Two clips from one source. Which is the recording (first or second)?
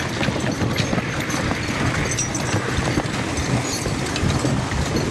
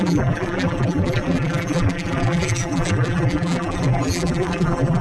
first